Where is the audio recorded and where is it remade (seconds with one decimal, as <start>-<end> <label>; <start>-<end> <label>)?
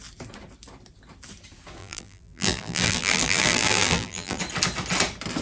0.0-1.8 recorded; 1.8-4.4 remade; 4.4-5.4 recorded